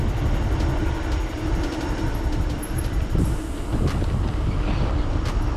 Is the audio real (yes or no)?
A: yes